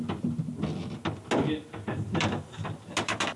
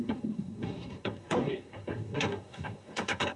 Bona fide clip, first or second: first